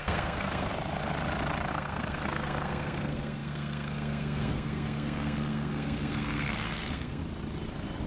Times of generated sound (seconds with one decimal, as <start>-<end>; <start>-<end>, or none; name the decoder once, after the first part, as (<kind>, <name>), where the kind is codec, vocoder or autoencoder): 0.0-0.7 (codec, SNAC); 1.7-7.2